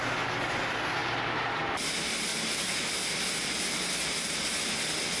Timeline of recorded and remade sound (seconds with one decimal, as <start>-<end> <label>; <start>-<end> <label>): 0.0-5.2 recorded